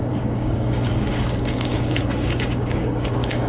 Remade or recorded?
remade